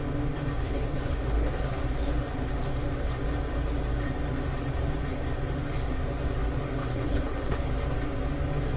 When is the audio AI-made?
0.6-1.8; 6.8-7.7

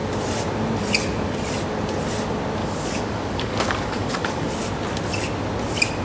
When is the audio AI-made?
2.6-4.5

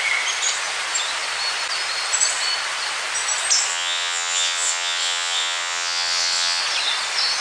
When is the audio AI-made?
3.7-6.6

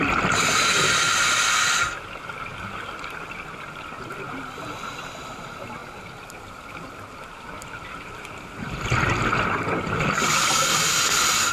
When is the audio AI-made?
none

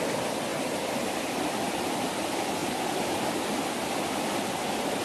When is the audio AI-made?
none

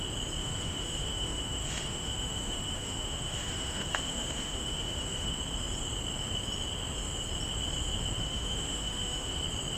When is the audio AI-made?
0.4-5.4; 8.2-9.4